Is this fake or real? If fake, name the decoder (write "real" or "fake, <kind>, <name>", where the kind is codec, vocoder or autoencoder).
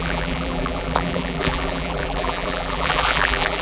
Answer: fake, vocoder, BigVGAN v2